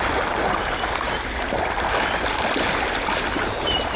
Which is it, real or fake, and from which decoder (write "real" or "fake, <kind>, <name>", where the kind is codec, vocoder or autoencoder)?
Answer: real